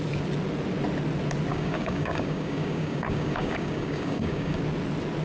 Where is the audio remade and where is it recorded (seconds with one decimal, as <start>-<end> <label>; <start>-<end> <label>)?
0.0-1.5 recorded; 1.5-4.6 remade; 4.6-5.2 recorded